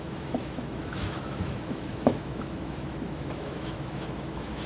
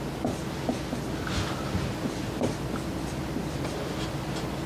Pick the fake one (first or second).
first